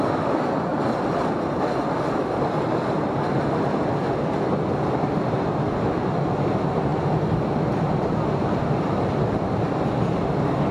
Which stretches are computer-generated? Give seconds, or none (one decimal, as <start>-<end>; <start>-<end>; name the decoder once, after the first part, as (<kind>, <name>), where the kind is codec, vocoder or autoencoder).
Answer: 0.7-4.3 (vocoder, BigVGAN v2)